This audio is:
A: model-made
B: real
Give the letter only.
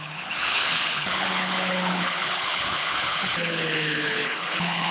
A